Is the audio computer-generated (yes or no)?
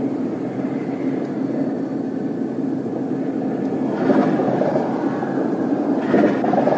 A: no